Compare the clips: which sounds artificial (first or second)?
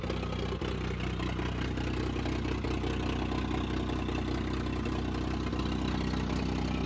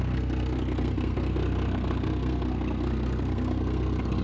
second